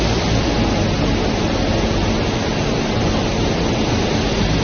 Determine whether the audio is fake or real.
real